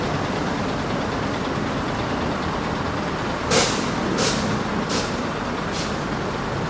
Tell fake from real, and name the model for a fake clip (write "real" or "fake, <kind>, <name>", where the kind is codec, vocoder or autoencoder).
fake, vocoder, BigVGAN v2